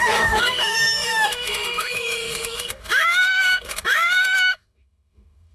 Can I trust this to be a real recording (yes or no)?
no